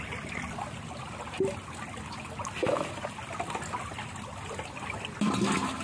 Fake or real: real